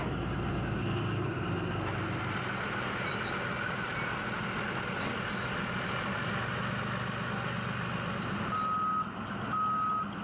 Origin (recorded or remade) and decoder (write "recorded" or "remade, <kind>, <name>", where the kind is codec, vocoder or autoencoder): recorded